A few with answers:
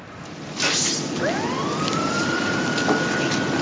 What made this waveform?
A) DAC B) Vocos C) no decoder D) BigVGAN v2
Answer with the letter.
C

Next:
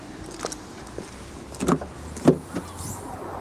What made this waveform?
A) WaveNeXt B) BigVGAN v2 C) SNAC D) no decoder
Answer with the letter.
D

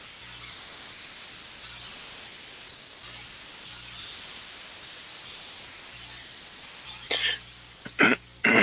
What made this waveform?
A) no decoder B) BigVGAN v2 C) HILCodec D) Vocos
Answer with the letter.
A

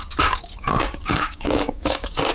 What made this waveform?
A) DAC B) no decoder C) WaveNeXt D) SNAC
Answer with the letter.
A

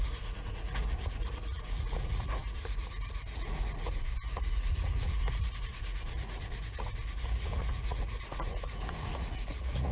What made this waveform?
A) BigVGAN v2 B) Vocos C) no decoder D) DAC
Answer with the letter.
B